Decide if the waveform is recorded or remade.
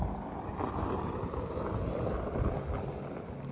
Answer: recorded